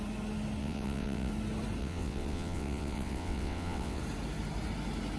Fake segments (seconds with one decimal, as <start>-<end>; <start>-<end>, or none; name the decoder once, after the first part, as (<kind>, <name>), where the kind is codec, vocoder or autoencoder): 0.6-1.3 (vocoder, WaveNeXt); 1.8-4.0